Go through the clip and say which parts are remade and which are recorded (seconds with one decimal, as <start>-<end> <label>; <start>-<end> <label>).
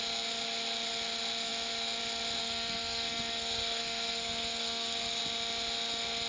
0.0-2.4 recorded; 2.4-5.2 remade; 5.2-6.3 recorded